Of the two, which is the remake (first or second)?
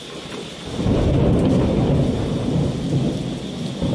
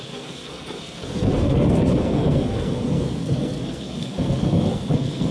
second